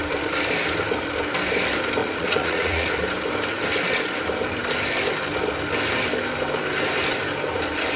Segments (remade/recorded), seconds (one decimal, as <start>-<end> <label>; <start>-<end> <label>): 0.0-2.0 recorded; 2.0-2.9 remade; 2.9-8.0 recorded

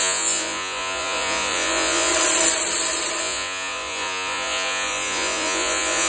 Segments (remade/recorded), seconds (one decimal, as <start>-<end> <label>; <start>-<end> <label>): 0.0-2.1 remade; 2.1-3.2 recorded; 3.2-6.1 remade

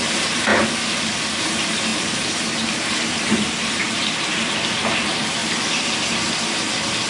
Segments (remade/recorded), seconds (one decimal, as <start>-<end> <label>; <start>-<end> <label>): 0.0-0.5 remade; 0.5-1.4 recorded; 1.4-5.4 remade; 5.4-7.1 recorded

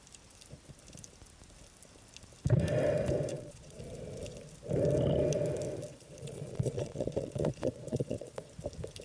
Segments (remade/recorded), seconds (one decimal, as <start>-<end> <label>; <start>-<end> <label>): 0.0-3.3 recorded; 3.3-3.8 remade; 3.8-5.9 recorded; 5.9-8.5 remade; 8.5-9.0 recorded